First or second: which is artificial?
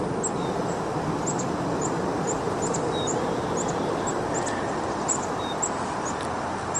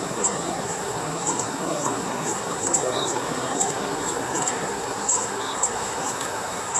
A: second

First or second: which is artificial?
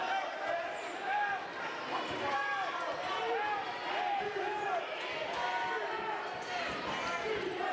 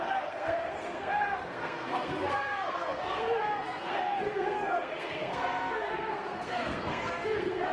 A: second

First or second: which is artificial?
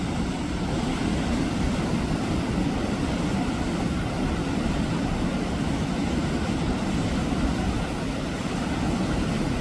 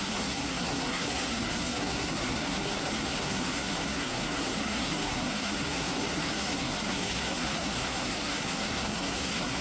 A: second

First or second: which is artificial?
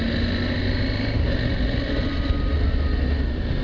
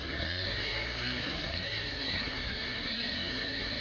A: second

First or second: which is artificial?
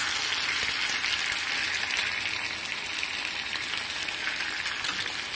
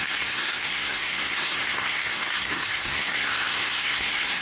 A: second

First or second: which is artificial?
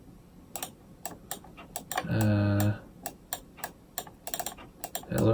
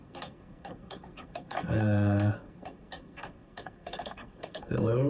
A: second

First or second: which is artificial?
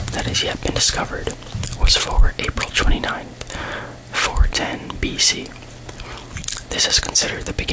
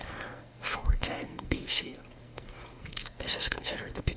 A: second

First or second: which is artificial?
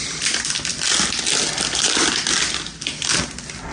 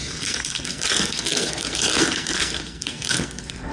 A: second